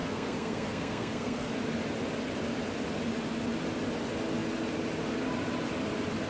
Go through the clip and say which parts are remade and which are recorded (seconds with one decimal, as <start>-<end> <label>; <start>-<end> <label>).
0.0-1.6 remade; 1.6-6.3 recorded